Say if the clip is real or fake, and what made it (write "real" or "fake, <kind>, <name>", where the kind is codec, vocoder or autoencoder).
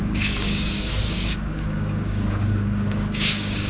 fake, codec, DAC